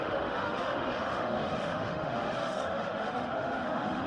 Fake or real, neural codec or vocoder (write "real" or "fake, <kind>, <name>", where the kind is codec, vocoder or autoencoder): fake, autoencoder, DAC-VAE